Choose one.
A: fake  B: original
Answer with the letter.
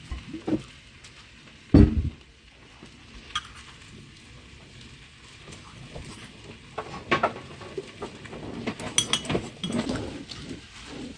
B